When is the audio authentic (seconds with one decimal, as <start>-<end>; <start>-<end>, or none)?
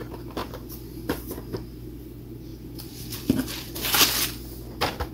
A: 0.0-2.5; 4.1-5.1